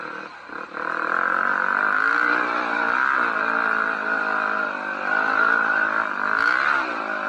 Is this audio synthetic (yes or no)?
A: no